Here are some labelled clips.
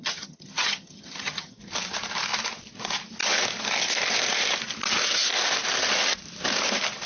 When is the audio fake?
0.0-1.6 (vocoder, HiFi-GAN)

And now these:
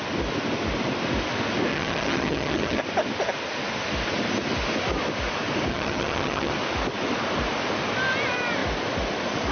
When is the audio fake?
1.7-2.8 (vocoder, HiFi-GAN); 5.7-6.5

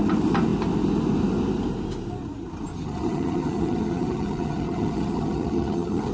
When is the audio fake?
2.7-6.1 (vocoder, HiFi-GAN)